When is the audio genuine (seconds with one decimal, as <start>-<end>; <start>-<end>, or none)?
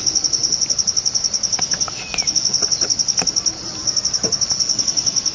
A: 0.0-5.3